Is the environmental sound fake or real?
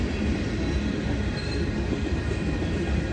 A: real